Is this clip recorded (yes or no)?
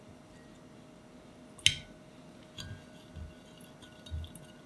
yes